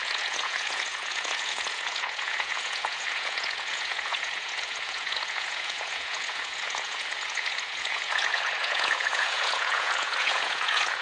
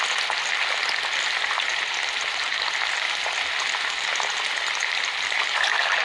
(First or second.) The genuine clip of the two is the second